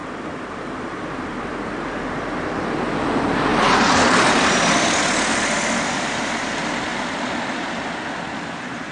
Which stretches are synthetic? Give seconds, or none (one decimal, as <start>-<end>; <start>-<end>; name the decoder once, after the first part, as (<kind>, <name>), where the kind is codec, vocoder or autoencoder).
0.0-8.9 (vocoder, BigVGAN v2)

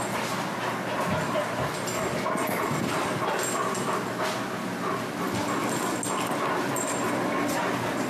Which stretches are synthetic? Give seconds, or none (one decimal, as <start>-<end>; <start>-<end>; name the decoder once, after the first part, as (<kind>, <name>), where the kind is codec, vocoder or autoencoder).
none